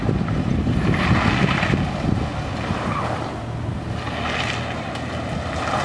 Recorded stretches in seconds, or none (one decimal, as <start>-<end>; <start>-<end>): 0.0-5.8